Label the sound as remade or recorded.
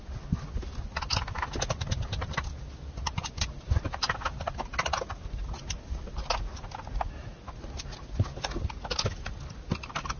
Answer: recorded